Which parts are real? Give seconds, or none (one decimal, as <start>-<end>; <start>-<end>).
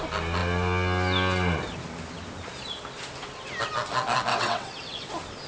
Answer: 0.0-4.3; 5.1-5.5